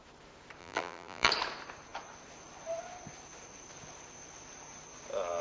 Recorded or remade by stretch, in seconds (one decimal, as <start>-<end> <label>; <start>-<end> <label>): 0.0-0.6 recorded; 0.6-1.3 remade; 1.3-5.4 recorded

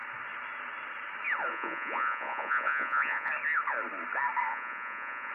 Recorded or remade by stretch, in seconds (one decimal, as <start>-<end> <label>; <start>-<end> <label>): 0.0-1.5 recorded; 1.5-3.3 remade; 3.3-4.5 recorded; 4.5-5.3 remade

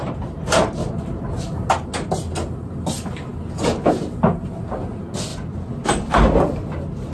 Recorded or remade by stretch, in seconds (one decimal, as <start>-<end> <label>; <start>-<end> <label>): 0.0-0.8 recorded; 0.8-1.7 remade; 1.7-5.3 recorded; 5.3-7.1 remade

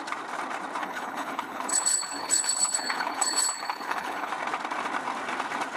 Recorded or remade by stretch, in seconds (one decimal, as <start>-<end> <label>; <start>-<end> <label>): 0.0-0.8 recorded; 0.8-4.3 remade; 4.3-5.8 recorded

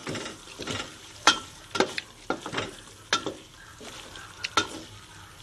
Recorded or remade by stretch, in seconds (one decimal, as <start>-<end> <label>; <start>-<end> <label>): 0.0-2.3 remade; 2.3-5.4 recorded

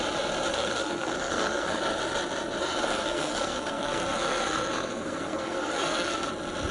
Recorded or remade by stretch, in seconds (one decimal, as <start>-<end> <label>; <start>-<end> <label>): 0.0-0.5 recorded; 0.5-1.8 remade; 1.8-2.6 recorded; 2.6-6.3 remade; 6.3-6.7 recorded

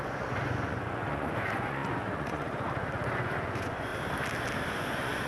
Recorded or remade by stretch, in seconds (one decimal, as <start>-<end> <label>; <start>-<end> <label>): 0.0-3.9 remade; 3.9-4.7 recorded; 4.7-5.3 remade

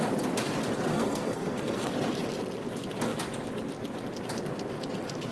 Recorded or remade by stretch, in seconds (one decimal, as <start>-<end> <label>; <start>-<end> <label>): 0.0-0.9 recorded; 0.9-1.9 remade; 1.9-5.3 recorded